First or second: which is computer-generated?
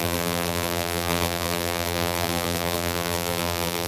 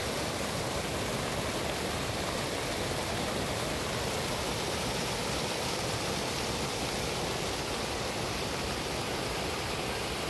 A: first